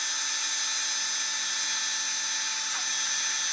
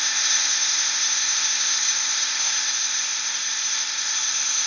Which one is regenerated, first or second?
second